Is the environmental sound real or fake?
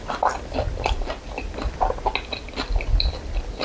real